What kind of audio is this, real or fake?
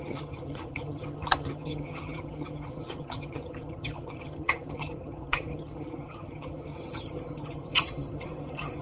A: fake